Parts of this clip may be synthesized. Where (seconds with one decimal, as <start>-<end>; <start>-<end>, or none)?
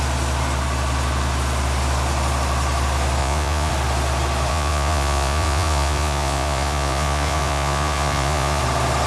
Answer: 3.2-3.7; 4.5-8.6